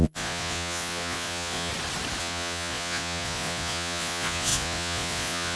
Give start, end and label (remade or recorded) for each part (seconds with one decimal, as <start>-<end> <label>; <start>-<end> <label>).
0.0-1.7 remade; 1.7-2.2 recorded; 2.2-5.6 remade